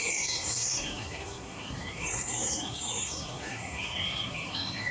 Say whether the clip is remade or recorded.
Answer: remade